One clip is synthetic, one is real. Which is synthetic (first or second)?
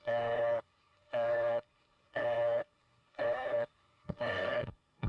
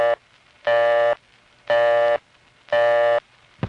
first